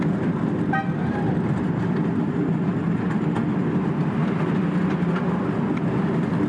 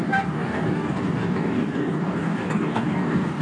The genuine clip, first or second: first